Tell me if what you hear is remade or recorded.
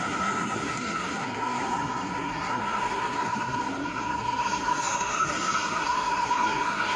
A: remade